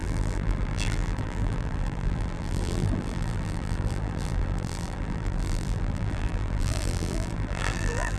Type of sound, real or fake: fake